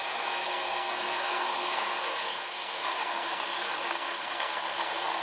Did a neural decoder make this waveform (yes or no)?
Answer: yes